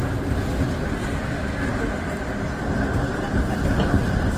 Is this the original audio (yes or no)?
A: yes